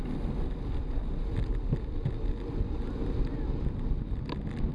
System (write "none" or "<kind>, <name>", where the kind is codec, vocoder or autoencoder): none